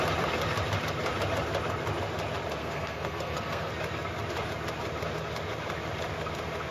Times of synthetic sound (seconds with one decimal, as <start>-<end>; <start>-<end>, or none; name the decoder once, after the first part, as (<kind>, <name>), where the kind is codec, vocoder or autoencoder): 2.6-3.7 (codec, SNAC)